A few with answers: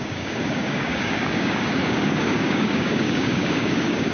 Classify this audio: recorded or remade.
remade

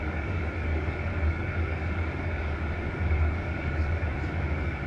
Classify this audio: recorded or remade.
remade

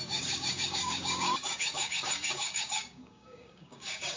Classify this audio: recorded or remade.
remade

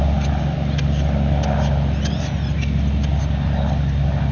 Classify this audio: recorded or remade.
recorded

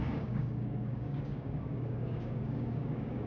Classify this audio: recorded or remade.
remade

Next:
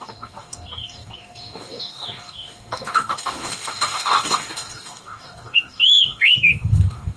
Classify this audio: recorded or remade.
remade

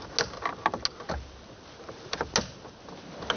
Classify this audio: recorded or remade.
recorded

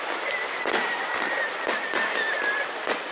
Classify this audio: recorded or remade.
recorded